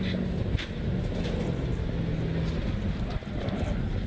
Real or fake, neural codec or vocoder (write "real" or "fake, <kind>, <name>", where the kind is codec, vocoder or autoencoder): real